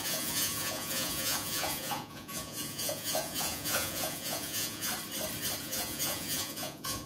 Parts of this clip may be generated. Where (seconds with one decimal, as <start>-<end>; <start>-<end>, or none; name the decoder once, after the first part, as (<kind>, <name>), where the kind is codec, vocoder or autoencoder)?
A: 0.0-4.9 (vocoder, Vocos); 5.6-7.1